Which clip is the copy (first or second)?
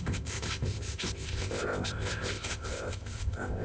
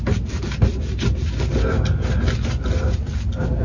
first